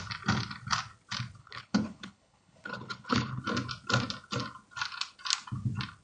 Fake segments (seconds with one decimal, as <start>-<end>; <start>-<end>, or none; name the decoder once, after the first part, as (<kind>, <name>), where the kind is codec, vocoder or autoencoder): 1.4-3.4 (codec, HILCodec)